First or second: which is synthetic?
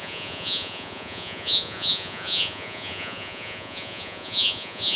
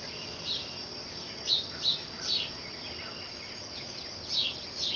first